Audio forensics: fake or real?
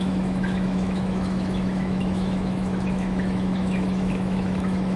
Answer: fake